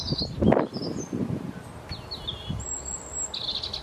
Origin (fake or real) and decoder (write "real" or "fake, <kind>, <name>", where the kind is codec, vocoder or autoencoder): real